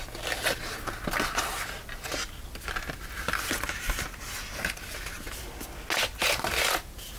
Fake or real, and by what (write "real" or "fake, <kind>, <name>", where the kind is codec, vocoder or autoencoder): real